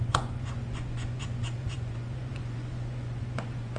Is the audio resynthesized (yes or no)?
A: yes